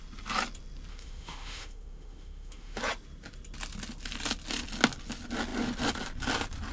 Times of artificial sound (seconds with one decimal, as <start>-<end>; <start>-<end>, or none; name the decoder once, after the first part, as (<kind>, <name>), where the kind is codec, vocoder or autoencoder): 0.9-2.8 (autoencoder, DAC-VAE)